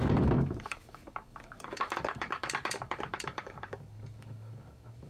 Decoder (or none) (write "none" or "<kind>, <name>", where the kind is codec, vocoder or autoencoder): codec, DAC